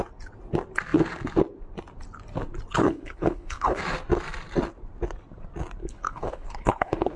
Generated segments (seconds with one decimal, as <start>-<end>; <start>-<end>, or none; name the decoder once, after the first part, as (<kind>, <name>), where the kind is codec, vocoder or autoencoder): 2.8-3.8 (codec, HILCodec); 5.8-7.2